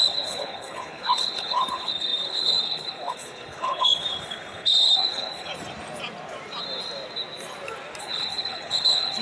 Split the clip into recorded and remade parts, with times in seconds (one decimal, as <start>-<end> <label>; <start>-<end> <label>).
0.0-5.5 remade; 5.5-8.0 recorded; 8.0-9.2 remade